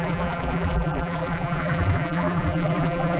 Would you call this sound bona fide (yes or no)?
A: no